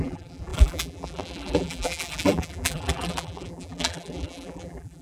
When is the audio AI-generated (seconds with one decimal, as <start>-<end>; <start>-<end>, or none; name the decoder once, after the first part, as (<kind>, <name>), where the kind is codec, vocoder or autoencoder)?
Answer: 0.0-5.0 (vocoder, BigVGAN v2)